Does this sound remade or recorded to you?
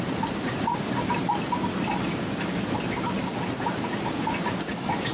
recorded